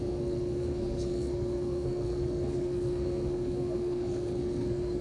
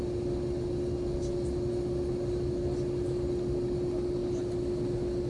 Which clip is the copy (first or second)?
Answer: first